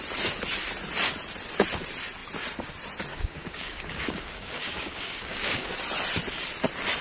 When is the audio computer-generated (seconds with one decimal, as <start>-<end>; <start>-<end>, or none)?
3.1-5.7